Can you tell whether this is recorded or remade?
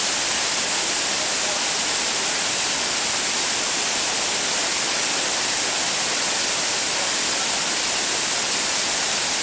remade